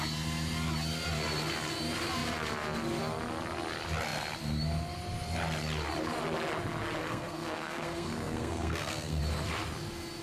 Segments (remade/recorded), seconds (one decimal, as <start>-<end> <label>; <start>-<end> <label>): 0.0-7.0 recorded; 7.0-9.2 remade; 9.2-10.2 recorded